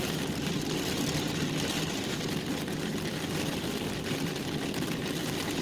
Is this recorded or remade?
recorded